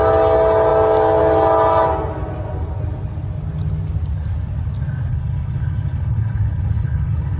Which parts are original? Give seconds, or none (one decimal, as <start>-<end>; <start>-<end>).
0.0-5.1

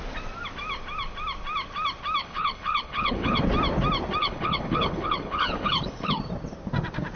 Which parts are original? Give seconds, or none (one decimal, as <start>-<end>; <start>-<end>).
0.0-2.2; 3.4-4.2; 6.2-7.2

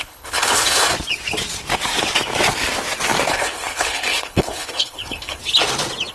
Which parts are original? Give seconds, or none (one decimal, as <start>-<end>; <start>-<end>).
0.9-3.3; 5.4-6.1

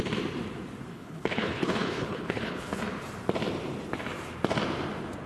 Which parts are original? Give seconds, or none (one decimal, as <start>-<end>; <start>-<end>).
0.0-0.9; 2.8-5.3

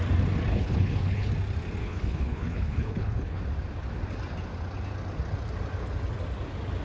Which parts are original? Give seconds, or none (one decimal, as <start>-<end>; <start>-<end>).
0.0-0.5; 1.3-1.8; 3.4-6.8

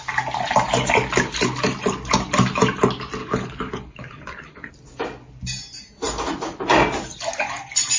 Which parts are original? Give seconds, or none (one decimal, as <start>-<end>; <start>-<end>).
0.0-3.2; 4.7-8.0

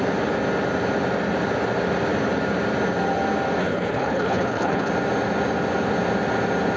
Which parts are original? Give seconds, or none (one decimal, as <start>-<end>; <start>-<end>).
0.0-3.6; 4.9-6.8

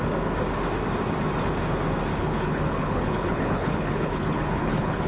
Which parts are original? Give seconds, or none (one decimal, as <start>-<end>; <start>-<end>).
0.0-2.1